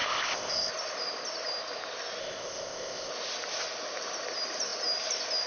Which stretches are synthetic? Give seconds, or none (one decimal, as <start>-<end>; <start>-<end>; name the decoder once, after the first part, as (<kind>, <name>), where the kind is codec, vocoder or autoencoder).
0.0-0.7 (codec, ZipCodec); 2.2-3.1